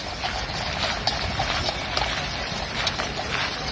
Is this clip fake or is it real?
real